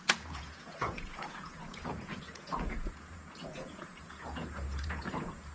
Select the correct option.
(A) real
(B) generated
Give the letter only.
B